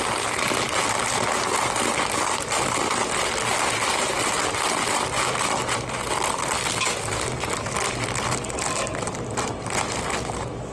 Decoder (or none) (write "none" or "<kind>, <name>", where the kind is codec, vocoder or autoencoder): none